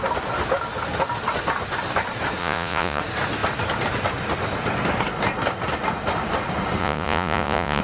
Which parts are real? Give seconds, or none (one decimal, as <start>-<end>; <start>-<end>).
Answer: 0.0-2.4; 3.0-6.8

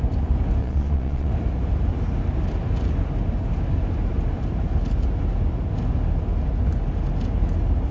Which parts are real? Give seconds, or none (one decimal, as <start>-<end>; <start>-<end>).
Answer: 0.0-0.6; 1.3-7.9